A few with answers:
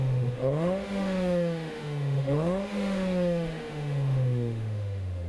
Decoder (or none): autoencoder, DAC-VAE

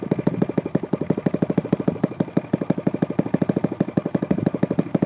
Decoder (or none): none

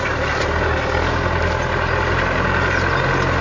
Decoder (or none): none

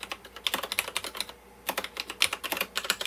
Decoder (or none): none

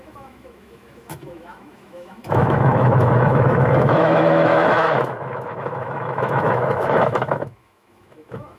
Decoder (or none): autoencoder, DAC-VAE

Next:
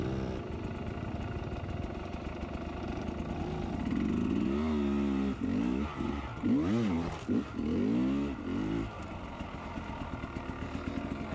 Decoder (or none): none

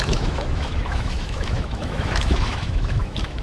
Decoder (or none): autoencoder, DAC-VAE